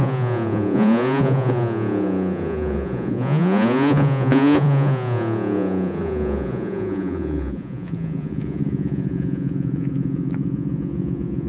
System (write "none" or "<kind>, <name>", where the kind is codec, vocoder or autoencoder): vocoder, Vocos